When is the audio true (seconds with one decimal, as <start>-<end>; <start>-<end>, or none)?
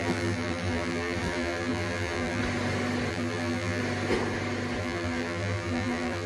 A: 2.4-3.1; 3.8-4.8